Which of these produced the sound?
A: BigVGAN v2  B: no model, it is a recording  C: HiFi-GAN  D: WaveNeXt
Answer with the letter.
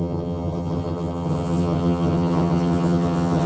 C